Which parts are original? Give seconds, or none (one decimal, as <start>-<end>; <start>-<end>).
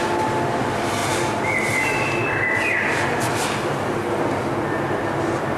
0.0-5.6